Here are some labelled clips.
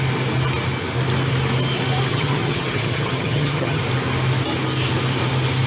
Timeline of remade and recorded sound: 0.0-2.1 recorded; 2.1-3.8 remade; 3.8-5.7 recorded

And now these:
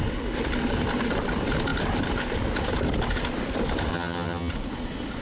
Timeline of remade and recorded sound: 0.0-3.9 recorded; 3.9-4.5 remade; 4.5-5.2 recorded

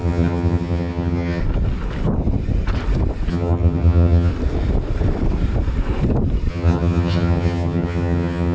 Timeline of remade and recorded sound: 0.0-1.4 remade; 1.4-3.3 recorded; 3.3-4.3 remade; 4.3-6.5 recorded; 6.5-8.5 remade